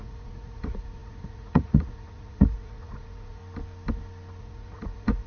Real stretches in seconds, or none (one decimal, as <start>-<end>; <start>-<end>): 3.4-4.4